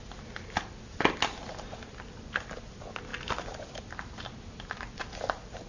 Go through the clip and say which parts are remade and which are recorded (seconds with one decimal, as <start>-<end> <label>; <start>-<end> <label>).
0.0-5.7 recorded